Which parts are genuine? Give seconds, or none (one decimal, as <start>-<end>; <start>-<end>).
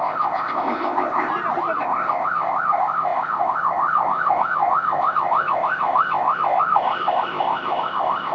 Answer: 1.3-1.8